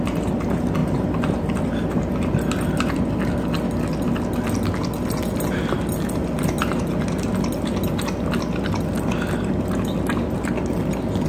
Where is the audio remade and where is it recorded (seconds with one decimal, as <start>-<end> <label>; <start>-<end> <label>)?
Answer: 0.0-11.3 recorded